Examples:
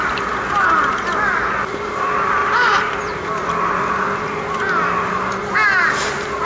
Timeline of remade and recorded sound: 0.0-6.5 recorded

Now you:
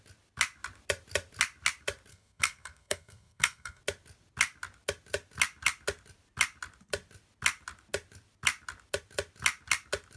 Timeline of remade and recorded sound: 0.0-2.1 recorded; 2.1-3.8 remade; 3.8-10.2 recorded

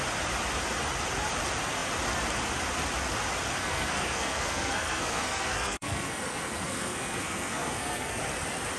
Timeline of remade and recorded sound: 0.0-3.6 recorded; 3.6-8.2 remade; 8.2-8.8 recorded

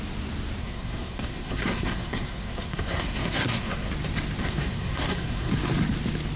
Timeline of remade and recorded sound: 0.0-0.6 recorded; 0.6-3.9 remade; 3.9-4.4 recorded; 4.4-5.5 remade; 5.5-6.4 recorded

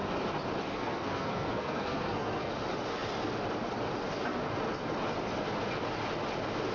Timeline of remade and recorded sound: 0.0-0.7 recorded; 0.7-2.5 remade; 2.5-6.7 recorded

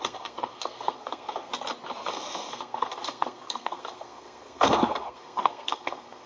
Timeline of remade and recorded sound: 0.0-1.5 remade; 1.5-2.1 recorded; 2.1-6.3 remade